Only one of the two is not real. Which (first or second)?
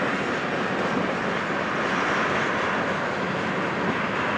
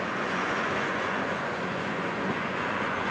second